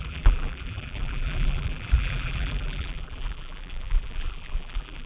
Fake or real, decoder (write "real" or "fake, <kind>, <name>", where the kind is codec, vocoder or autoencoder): fake, vocoder, BigVGAN v2